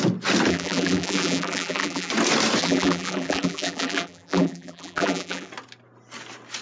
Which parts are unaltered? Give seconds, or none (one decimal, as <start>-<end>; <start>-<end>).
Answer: 0.0-0.5; 2.1-2.6; 5.5-6.6